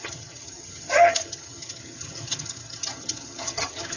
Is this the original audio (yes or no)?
no